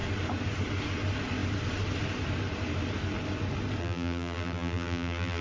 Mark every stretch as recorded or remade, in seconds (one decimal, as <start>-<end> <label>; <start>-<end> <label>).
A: 0.0-3.8 recorded; 3.8-5.4 remade